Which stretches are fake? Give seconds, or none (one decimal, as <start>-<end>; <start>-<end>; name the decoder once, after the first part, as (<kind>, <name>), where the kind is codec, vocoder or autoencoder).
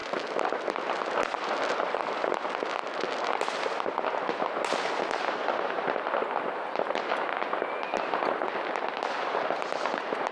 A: none